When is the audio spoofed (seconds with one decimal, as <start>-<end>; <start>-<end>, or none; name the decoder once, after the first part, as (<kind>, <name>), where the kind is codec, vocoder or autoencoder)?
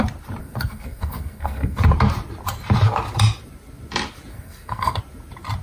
0.4-1.8 (codec, SNAC); 4.3-5.0